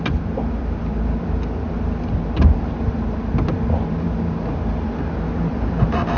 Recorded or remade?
remade